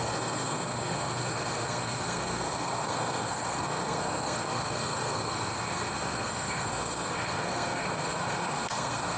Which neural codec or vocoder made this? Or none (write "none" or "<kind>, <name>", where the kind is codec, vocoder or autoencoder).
codec, SNAC